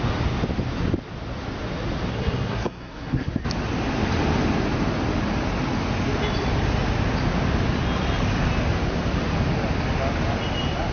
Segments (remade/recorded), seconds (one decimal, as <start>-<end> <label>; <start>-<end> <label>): 0.0-2.1 recorded; 2.1-3.3 remade; 3.3-10.9 recorded